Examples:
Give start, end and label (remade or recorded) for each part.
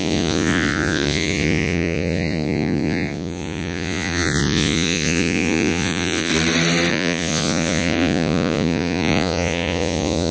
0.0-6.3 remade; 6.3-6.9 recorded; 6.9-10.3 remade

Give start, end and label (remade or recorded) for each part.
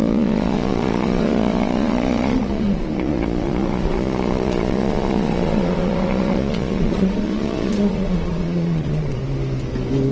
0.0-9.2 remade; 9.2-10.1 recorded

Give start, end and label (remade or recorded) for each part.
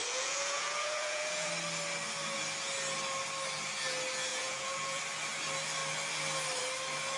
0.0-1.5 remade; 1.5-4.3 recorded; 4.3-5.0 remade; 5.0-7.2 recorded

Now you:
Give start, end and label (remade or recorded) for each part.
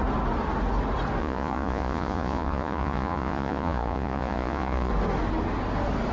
0.0-1.2 recorded; 1.2-4.9 remade; 4.9-6.1 recorded